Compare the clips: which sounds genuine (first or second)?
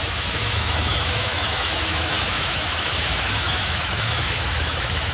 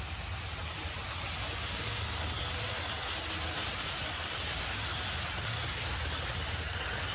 second